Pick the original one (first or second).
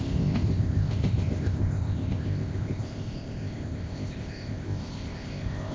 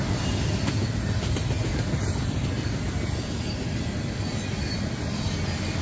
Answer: second